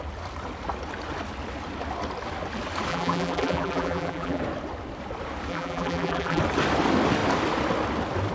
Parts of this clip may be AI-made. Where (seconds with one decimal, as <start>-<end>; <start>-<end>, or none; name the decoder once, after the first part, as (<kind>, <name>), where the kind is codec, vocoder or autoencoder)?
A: 2.9-4.4 (vocoder, BigVGAN v2); 5.5-6.4